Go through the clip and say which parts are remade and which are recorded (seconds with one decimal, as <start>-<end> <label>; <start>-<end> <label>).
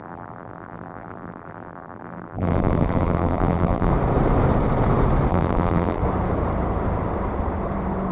0.0-3.9 remade; 3.9-5.3 recorded; 5.3-6.0 remade; 6.0-8.1 recorded